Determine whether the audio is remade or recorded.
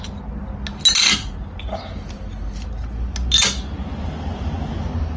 recorded